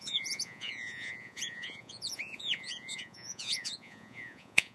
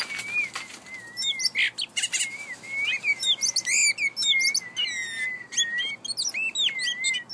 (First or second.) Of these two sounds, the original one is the second